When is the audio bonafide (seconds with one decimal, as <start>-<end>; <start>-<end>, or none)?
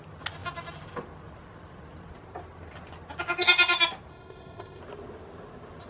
0.0-4.1; 4.8-5.9